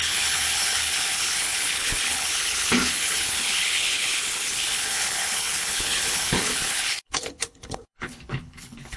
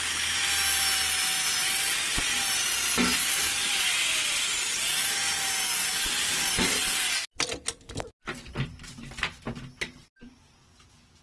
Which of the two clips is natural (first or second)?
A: second